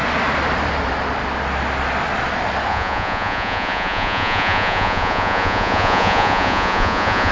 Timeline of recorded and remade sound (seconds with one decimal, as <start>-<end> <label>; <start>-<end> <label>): 0.0-2.7 recorded; 2.7-7.3 remade